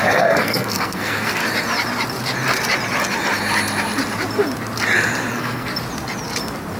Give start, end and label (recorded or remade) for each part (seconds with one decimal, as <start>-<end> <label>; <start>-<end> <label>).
0.0-1.4 remade; 1.4-5.3 recorded; 5.3-5.7 remade; 5.7-6.8 recorded